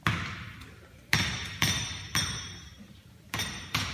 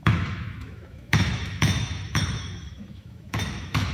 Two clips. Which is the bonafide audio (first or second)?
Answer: first